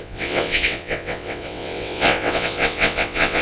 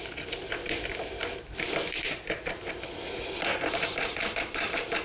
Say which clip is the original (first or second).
second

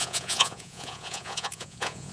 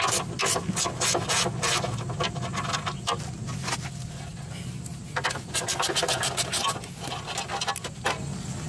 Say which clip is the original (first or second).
second